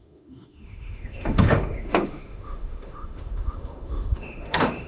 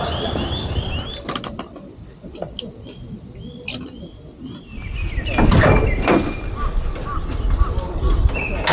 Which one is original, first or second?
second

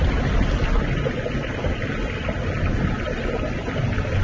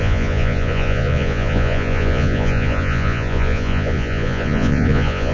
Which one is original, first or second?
first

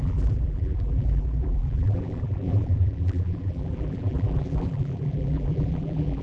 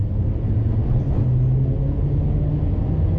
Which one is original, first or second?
second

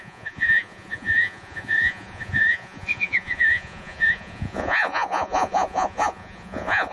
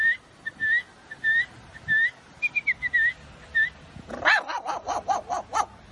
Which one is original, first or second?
second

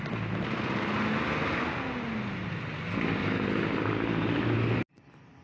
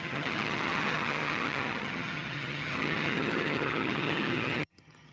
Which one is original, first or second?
first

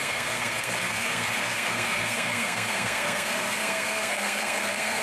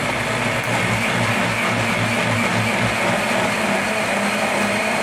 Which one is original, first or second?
second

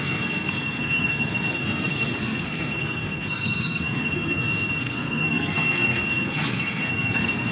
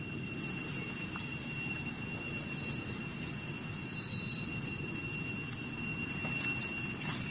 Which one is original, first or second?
second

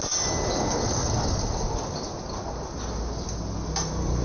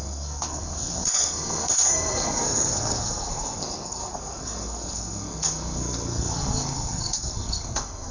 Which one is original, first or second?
first